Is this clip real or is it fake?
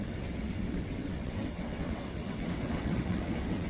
fake